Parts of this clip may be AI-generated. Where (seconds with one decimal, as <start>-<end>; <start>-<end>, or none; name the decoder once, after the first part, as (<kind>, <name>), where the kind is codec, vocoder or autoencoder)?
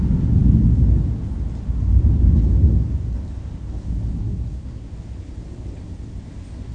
4.2-4.9 (codec, SNAC)